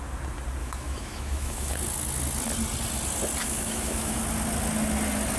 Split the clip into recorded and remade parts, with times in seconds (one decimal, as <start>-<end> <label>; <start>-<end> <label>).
0.0-0.6 recorded; 0.6-1.7 remade; 1.7-3.4 recorded; 3.4-4.2 remade; 4.2-5.4 recorded